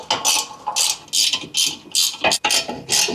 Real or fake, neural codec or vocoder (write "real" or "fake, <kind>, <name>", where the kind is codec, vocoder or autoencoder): real